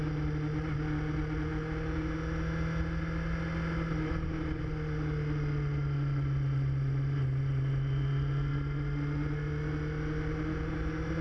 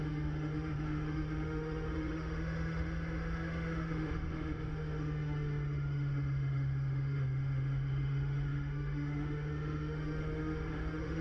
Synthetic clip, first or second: second